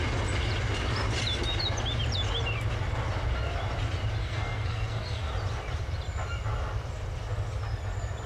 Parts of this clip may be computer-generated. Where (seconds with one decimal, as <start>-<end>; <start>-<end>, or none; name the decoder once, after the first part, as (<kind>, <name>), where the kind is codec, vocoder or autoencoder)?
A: 4.2-5.3 (codec, SNAC)